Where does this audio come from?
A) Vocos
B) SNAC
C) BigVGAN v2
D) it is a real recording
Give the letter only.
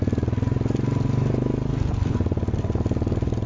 D